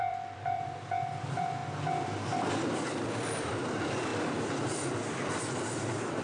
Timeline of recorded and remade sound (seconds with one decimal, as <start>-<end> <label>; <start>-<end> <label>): 0.0-1.6 remade; 1.6-2.5 recorded; 2.5-6.2 remade